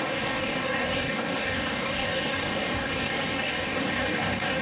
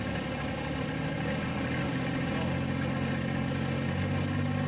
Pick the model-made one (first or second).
first